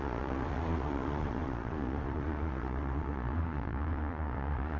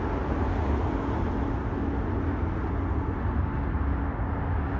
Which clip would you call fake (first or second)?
first